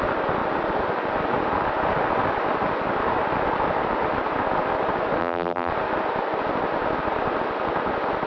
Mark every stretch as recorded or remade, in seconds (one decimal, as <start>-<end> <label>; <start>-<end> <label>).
0.0-5.2 recorded; 5.2-5.7 remade; 5.7-8.3 recorded